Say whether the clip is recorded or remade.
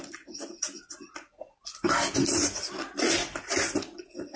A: recorded